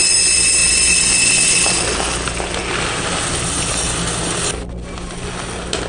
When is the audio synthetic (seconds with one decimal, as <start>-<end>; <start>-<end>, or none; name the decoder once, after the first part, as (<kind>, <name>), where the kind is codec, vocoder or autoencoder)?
none